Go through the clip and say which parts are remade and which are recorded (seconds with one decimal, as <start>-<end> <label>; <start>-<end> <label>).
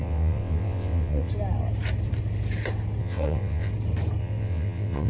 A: 0.0-1.3 remade; 1.3-3.0 recorded; 3.0-3.7 remade; 3.7-4.2 recorded; 4.2-5.1 remade